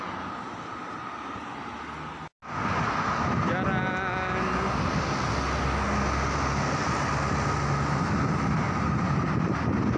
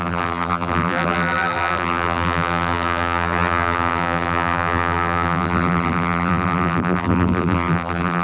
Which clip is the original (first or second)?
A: first